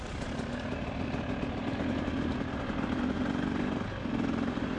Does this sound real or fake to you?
real